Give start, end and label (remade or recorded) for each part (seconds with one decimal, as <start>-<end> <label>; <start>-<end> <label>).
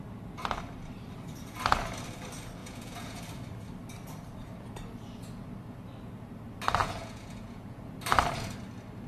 0.0-2.6 recorded; 2.6-3.2 remade; 3.2-6.8 recorded; 6.8-7.8 remade; 7.8-9.1 recorded